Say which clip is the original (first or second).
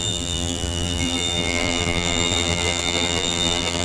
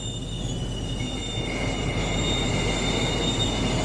second